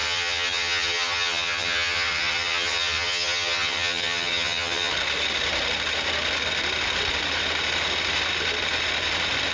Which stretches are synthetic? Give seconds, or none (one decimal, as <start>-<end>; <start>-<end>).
0.0-4.9